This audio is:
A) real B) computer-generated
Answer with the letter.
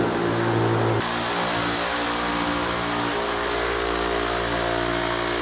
A